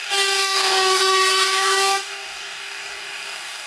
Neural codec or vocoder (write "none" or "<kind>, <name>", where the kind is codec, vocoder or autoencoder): codec, DAC